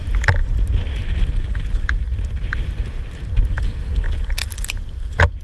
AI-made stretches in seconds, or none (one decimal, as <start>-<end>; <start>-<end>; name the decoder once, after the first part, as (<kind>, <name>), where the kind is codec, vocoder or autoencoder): none